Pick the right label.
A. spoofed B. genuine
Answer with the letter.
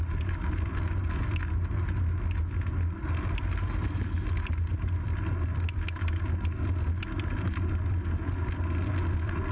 B